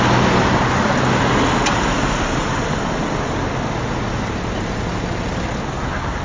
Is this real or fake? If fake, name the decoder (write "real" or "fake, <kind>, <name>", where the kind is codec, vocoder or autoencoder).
real